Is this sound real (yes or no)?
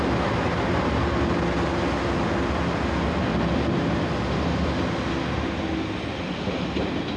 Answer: yes